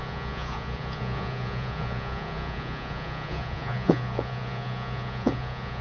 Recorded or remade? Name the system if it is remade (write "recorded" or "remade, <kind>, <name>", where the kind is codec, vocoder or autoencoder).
remade, vocoder, Vocos